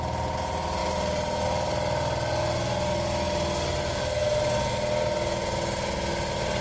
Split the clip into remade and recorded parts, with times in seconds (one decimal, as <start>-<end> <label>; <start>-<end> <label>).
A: 0.0-6.6 recorded